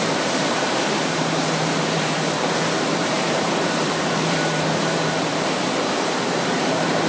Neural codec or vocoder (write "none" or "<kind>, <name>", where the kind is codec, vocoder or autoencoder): vocoder, BigVGAN v2